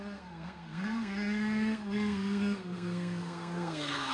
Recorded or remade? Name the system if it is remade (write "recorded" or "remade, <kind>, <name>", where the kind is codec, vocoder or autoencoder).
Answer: remade, codec, SNAC